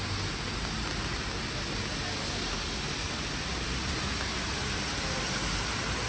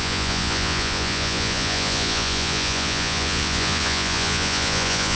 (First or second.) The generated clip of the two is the second